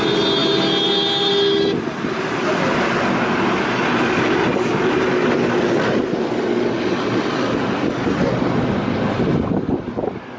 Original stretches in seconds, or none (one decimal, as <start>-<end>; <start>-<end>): 0.0-10.4